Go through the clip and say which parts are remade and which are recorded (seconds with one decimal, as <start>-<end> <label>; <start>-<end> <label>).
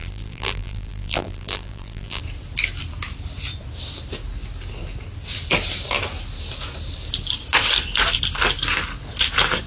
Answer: 0.0-2.2 remade; 2.2-9.7 recorded